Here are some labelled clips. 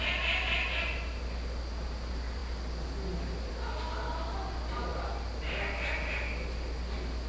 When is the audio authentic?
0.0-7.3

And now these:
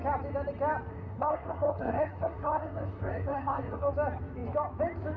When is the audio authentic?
0.0-0.9; 3.9-5.2

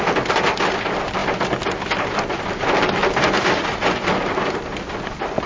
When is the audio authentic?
0.0-5.5

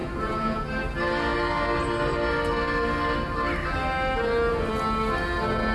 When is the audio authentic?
0.6-5.7

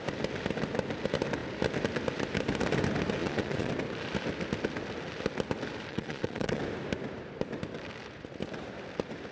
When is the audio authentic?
0.0-3.2; 3.7-5.9; 6.6-9.3

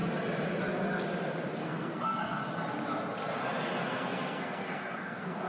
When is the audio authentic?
0.0-1.6; 2.4-3.8

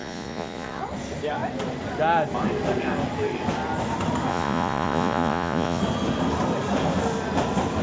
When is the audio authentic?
0.8-4.3; 5.8-7.8

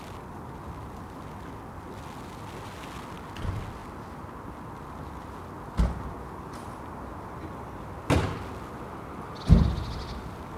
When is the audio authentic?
0.0-10.6